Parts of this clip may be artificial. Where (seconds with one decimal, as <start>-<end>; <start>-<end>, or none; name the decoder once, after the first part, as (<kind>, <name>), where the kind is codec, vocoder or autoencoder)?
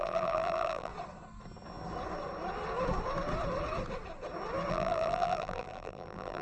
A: 0.0-0.9 (vocoder, BigVGAN v2); 4.7-6.4